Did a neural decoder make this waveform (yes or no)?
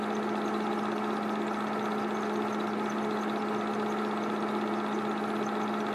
no